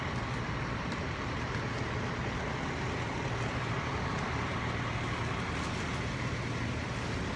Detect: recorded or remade recorded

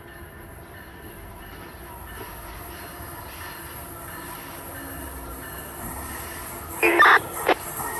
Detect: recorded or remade recorded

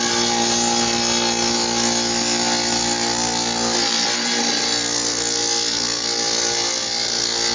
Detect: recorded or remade recorded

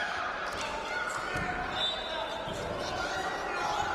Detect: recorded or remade recorded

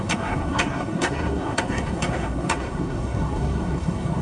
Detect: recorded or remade remade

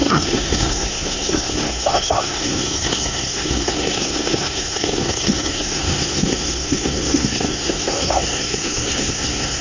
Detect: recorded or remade remade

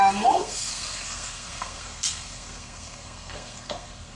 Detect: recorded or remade remade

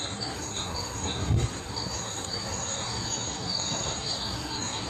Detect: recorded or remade remade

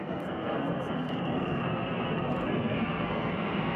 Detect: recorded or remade remade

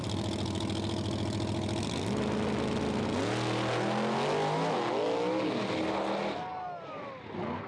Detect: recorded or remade recorded